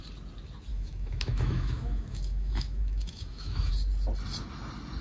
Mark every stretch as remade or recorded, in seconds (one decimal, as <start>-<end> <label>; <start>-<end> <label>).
0.0-0.7 recorded; 0.7-3.7 remade; 3.7-5.0 recorded